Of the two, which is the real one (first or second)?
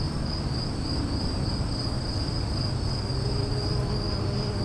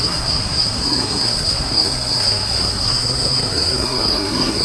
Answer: first